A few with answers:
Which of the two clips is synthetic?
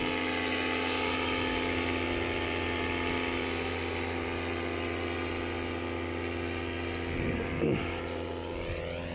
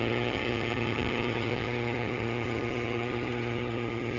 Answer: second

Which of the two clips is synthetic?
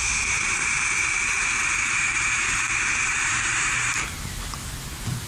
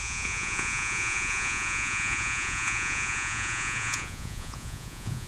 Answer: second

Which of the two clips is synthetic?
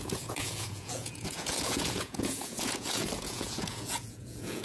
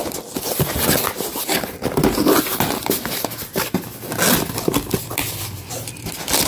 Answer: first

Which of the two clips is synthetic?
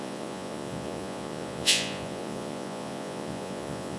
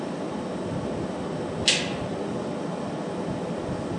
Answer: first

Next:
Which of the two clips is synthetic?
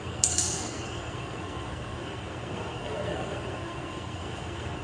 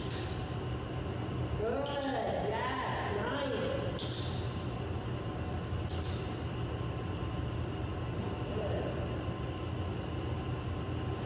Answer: first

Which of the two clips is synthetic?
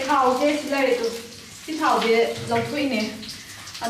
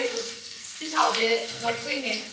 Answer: second